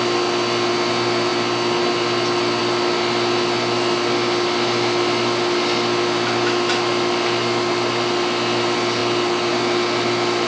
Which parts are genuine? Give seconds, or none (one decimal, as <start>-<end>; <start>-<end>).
0.0-10.5